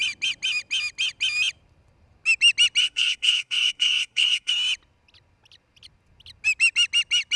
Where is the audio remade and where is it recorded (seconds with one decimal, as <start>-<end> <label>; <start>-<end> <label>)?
0.0-2.8 recorded; 2.8-4.5 remade; 4.5-7.4 recorded

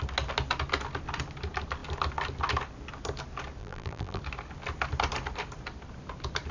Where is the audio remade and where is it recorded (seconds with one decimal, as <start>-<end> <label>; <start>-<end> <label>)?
0.0-3.6 recorded; 3.6-4.2 remade; 4.2-6.5 recorded